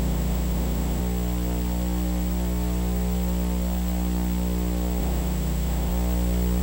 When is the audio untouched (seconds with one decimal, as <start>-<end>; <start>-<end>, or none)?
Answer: 1.0-5.0; 5.9-6.6